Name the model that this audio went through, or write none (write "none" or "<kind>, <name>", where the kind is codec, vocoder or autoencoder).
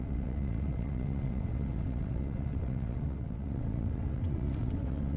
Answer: vocoder, WaveNeXt